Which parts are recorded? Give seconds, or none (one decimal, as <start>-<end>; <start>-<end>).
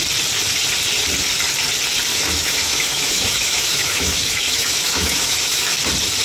0.0-2.1; 5.8-6.2